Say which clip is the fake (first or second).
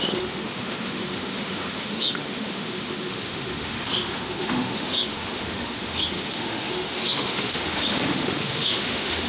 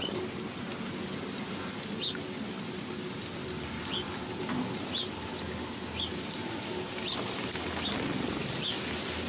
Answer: first